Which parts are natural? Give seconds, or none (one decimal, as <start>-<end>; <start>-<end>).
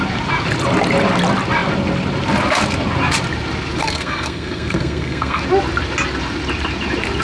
0.0-3.8; 5.4-7.2